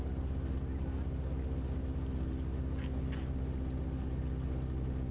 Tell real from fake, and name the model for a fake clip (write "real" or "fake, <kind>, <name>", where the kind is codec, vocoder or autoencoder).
real